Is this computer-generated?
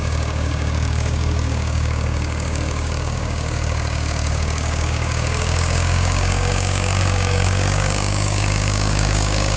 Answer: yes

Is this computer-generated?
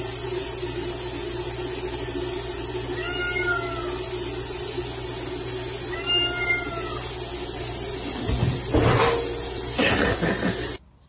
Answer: no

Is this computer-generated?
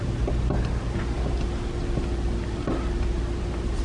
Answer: no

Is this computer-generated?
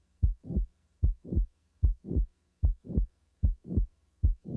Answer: yes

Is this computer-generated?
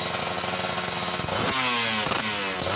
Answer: no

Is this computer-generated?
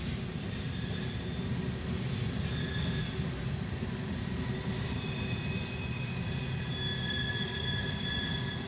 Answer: no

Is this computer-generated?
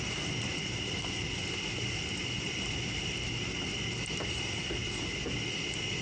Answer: no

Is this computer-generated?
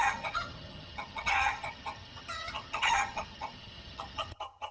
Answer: yes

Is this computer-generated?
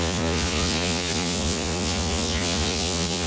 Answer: yes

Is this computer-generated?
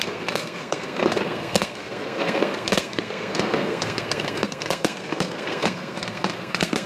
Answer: yes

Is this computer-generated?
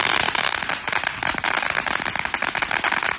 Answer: no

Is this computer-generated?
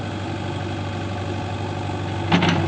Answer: no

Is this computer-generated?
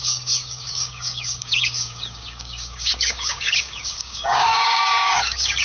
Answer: yes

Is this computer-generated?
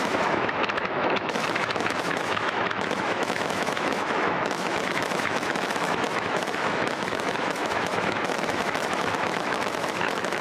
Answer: yes